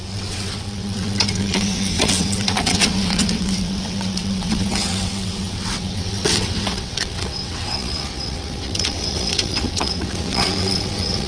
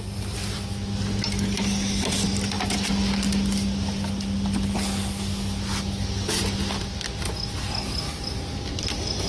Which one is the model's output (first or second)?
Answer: first